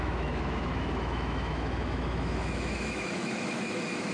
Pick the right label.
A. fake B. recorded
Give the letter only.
A